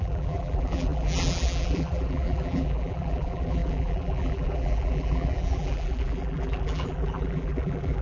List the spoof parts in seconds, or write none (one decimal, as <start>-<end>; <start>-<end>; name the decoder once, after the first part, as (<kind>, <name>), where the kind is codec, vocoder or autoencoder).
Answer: 0.0-8.0 (vocoder, BigVGAN v2)